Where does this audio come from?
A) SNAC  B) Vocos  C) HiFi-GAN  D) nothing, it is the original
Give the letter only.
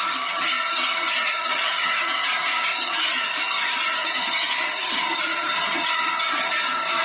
C